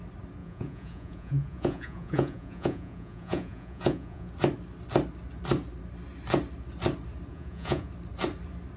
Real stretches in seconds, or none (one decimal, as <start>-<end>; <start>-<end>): 0.0-0.4; 4.3-7.3; 7.9-8.8